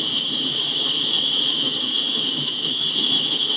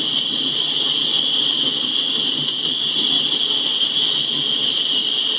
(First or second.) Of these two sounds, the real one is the second